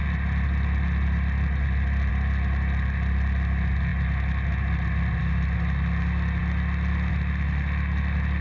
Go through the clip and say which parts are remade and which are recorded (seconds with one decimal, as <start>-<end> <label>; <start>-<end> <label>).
0.0-8.4 recorded